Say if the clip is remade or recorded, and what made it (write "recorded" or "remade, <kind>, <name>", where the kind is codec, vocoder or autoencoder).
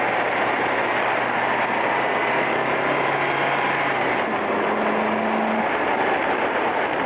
recorded